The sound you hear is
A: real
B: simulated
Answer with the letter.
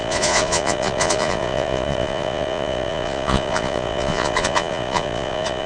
B